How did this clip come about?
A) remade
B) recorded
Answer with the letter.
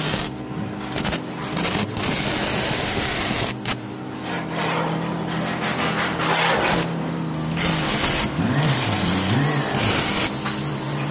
B